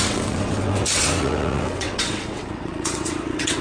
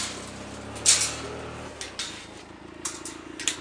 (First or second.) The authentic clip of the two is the second